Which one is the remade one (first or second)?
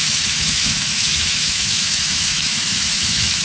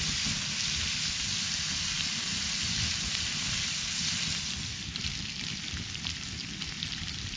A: first